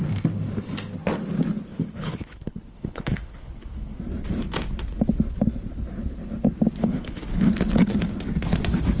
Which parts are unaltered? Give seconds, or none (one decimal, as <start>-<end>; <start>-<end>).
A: 0.0-1.7; 4.0-6.8; 7.5-9.0